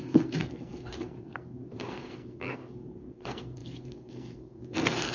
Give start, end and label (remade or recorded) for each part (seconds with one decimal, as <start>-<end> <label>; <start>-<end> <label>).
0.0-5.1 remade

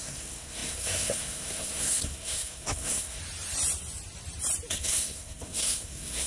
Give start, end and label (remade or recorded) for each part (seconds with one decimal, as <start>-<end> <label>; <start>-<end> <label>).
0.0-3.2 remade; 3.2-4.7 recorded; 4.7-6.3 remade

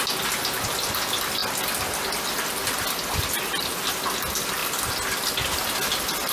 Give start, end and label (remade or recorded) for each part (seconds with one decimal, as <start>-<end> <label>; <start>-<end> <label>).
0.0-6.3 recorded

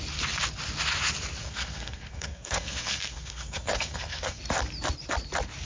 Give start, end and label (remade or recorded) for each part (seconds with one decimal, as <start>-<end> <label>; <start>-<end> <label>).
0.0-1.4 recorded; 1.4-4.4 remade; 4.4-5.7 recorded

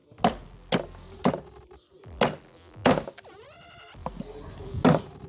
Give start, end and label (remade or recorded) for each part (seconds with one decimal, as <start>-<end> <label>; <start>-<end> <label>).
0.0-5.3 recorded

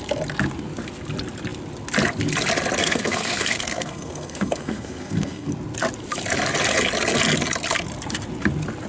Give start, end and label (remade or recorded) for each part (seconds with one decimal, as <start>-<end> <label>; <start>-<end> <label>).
0.0-2.8 recorded; 2.8-5.5 remade; 5.5-8.9 recorded

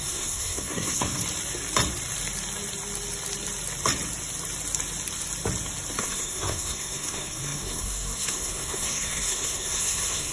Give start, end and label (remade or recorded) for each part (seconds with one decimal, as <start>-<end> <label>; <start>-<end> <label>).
0.0-1.2 remade; 1.2-6.0 recorded; 6.0-10.3 remade